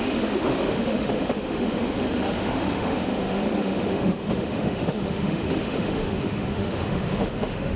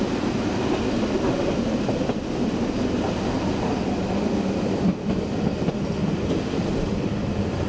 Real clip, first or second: second